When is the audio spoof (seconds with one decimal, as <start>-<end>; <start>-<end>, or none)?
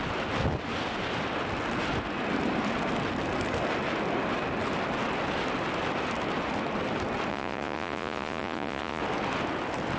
7.3-9.0